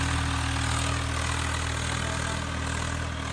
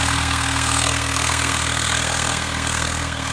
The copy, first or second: second